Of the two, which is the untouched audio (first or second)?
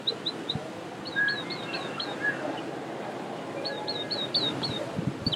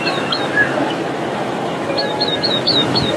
first